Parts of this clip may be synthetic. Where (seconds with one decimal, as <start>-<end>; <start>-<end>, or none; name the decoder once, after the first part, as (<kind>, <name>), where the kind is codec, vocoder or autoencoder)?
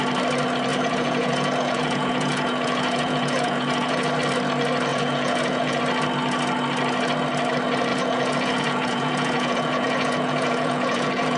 0.7-4.1 (vocoder, Vocos); 4.9-5.8; 7.9-11.4